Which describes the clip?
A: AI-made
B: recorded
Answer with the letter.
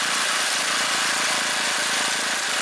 B